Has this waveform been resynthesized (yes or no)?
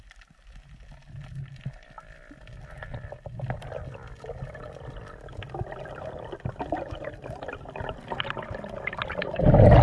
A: no